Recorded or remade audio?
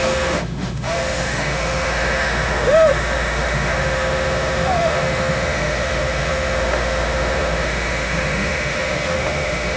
remade